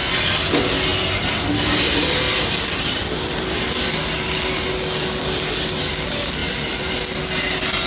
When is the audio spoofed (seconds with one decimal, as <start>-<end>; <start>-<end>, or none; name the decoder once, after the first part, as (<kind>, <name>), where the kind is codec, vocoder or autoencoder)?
none